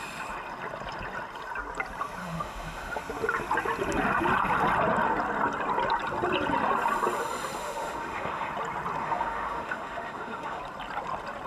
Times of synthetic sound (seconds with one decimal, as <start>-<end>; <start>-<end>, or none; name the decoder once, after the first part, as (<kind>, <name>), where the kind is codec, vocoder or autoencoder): 2.2-3.0 (autoencoder, DAC-VAE); 7.6-8.5; 9.0-10.6